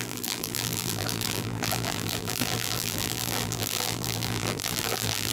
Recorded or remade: remade